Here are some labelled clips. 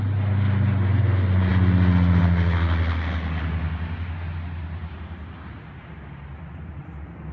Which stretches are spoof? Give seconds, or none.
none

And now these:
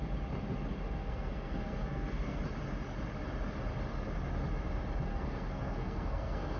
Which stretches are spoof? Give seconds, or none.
1.0-2.4 (codec, SNAC); 5.1-6.6

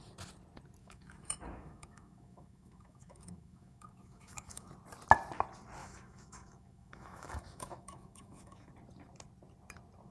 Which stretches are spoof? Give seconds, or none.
0.8-4.7 (autoencoder, DAC-VAE); 5.8-8.7

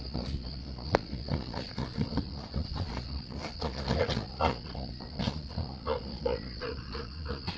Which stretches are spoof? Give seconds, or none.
0.0-7.6 (vocoder, Vocos)

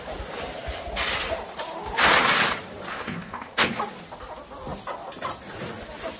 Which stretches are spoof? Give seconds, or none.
2.9-3.7 (codec, ZipCodec)

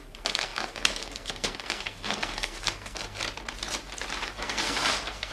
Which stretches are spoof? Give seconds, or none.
0.0-3.2 (codec, SNAC); 4.2-5.3

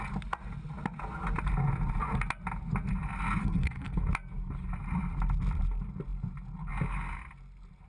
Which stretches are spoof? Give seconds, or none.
3.4-4.0 (codec, SNAC)